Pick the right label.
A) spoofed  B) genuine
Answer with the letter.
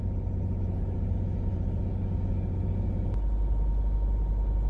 B